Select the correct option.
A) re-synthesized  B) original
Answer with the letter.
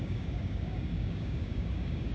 A